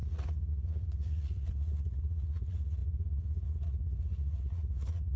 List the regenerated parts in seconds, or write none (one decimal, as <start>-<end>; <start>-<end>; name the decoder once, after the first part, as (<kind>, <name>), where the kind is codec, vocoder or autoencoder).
0.0-5.2 (vocoder, Vocos)